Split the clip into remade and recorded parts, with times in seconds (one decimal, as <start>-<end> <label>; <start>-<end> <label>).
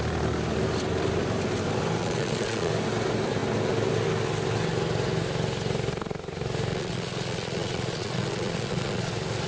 0.0-2.0 recorded; 2.0-2.7 remade; 2.7-6.7 recorded; 6.7-9.1 remade; 9.1-9.5 recorded